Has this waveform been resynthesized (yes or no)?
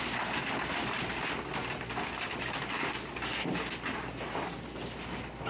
no